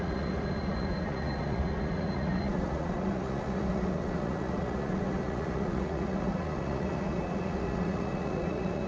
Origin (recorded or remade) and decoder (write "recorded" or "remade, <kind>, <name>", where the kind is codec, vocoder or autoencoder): remade, vocoder, Vocos